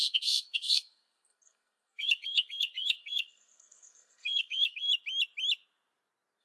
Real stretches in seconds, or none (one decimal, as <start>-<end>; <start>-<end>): 4.9-6.4